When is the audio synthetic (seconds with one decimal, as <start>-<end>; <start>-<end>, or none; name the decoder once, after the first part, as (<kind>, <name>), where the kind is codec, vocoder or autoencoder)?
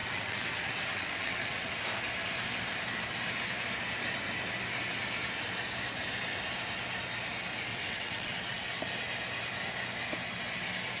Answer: 0.0-1.8 (vocoder, WaveNeXt); 7.7-8.9